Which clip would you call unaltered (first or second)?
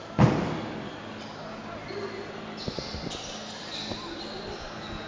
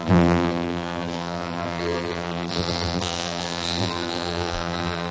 first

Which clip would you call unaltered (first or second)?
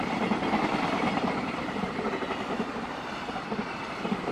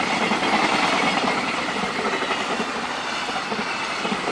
second